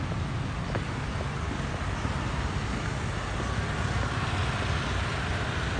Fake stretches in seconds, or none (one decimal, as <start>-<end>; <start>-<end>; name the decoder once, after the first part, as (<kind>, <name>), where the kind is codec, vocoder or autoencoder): none